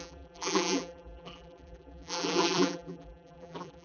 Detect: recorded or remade remade